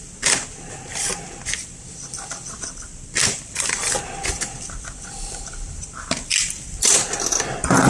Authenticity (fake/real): real